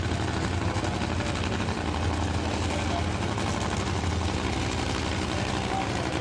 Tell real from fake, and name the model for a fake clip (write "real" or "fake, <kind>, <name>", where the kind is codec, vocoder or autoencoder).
real